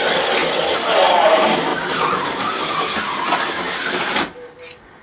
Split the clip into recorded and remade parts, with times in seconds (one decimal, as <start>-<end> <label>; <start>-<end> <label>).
0.0-5.0 recorded